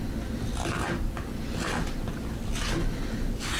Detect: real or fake real